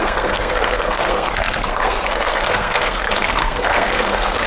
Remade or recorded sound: remade